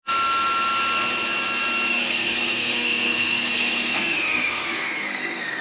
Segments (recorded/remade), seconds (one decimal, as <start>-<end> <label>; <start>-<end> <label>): 0.0-1.9 recorded; 1.9-5.6 remade